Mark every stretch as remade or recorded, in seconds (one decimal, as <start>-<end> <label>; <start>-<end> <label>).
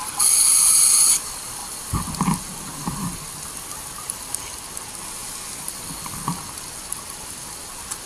0.0-8.1 recorded